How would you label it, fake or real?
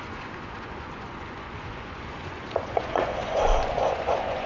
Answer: fake